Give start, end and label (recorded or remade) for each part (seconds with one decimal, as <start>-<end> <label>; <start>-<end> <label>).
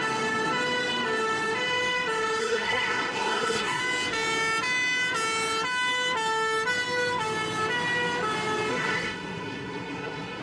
0.0-2.4 recorded; 2.4-3.8 remade; 3.8-8.7 recorded; 8.7-10.4 remade